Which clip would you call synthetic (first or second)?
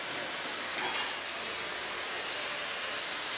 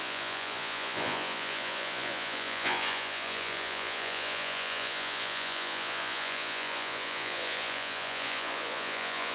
second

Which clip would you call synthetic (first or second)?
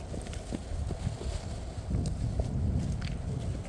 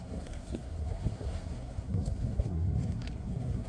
second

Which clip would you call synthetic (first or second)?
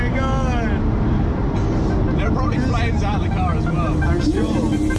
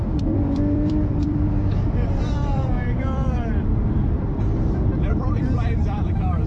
second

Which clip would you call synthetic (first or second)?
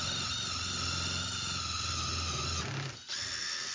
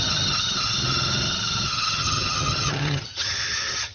second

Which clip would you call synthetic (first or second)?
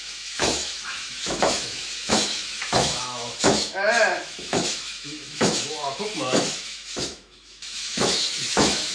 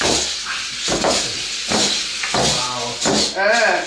first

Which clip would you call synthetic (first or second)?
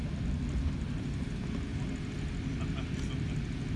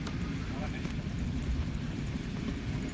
second